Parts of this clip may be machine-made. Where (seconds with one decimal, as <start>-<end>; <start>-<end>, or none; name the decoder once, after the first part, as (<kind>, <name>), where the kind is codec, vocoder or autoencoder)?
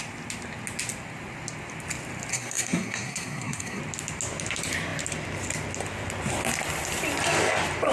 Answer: 2.3-3.8 (codec, SNAC)